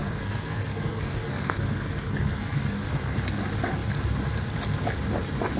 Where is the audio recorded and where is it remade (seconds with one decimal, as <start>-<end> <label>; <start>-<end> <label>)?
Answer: 0.0-3.4 remade; 3.4-5.6 recorded